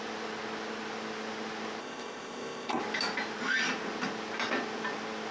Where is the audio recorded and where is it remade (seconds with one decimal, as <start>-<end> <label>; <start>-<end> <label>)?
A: 0.0-1.8 recorded; 1.8-2.8 remade; 2.8-5.3 recorded